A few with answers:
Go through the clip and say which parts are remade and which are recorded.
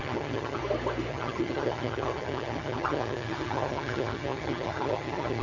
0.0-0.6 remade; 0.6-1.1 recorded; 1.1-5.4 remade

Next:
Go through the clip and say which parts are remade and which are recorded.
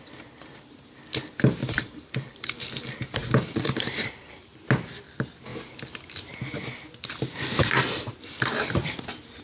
0.0-1.6 recorded; 1.6-4.3 remade; 4.3-9.4 recorded